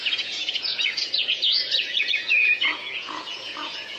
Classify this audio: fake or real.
fake